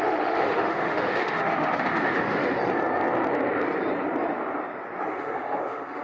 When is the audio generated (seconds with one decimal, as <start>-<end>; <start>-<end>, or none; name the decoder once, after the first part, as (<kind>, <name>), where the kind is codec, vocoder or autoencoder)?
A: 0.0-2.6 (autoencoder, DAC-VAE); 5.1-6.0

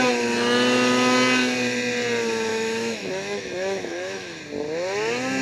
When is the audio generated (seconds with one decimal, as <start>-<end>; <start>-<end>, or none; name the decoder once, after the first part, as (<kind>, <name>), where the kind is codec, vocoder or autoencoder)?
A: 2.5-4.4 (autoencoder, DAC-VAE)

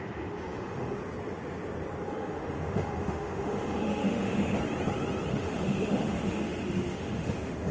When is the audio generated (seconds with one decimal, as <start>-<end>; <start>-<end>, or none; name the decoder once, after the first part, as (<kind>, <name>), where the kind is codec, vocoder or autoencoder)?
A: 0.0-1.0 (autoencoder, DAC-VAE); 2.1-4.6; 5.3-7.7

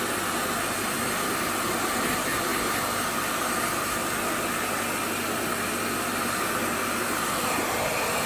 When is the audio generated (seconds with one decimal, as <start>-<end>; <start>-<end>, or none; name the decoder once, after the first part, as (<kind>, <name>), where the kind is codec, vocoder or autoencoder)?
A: none

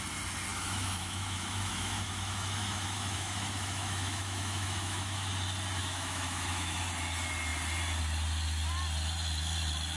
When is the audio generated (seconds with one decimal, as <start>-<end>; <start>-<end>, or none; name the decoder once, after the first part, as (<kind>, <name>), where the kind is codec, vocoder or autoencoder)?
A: 0.5-5.3 (autoencoder, DAC-VAE); 5.8-6.8